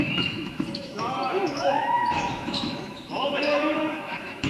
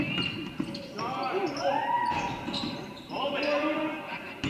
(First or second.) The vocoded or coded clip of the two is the first